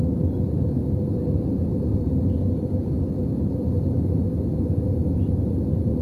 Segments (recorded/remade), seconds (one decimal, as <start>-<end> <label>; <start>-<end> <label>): 0.0-6.0 recorded